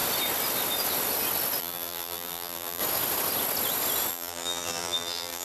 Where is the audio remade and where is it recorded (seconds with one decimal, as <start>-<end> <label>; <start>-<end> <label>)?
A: 0.0-1.6 recorded; 1.6-2.8 remade; 2.8-4.1 recorded; 4.1-5.4 remade